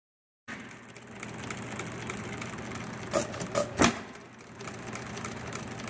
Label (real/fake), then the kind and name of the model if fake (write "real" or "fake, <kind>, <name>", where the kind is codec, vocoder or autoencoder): real